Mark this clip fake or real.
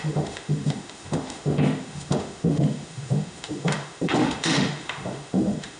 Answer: fake